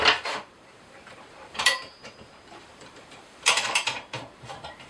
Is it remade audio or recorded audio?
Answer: remade